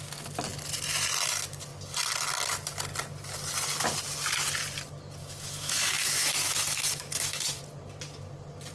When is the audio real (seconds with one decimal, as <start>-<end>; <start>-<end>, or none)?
0.0-5.2; 7.6-8.7